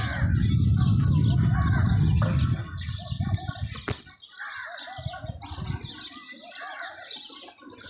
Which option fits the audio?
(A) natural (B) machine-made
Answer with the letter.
A